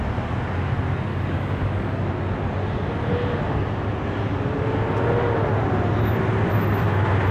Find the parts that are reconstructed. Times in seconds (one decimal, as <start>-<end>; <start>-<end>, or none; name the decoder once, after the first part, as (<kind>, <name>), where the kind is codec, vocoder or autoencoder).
1.1-2.0 (codec, DAC)